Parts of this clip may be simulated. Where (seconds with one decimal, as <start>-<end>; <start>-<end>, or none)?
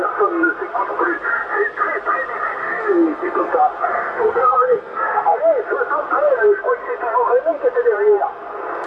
2.6-3.5; 3.9-5.4